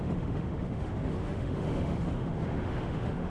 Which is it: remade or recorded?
remade